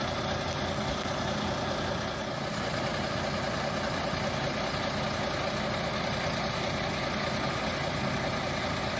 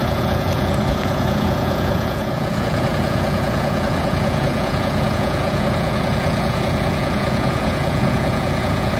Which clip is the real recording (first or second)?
first